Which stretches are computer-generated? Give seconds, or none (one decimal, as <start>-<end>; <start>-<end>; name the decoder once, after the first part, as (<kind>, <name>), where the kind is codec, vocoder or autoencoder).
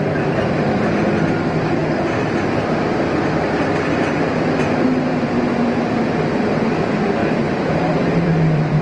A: 0.0-1.8 (vocoder, BigVGAN v2); 4.3-5.1; 6.4-8.8